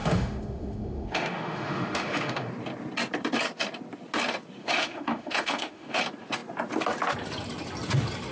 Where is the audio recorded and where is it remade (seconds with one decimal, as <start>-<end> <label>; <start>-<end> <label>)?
0.0-2.5 remade; 2.5-4.6 recorded; 4.6-6.0 remade; 6.0-8.3 recorded